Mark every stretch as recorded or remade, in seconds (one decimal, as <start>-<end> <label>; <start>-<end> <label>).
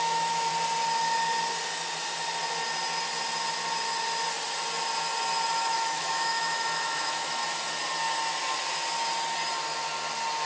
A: 0.0-0.5 remade; 0.5-5.5 recorded; 5.5-7.4 remade; 7.4-10.5 recorded